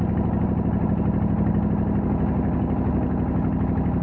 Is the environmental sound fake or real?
real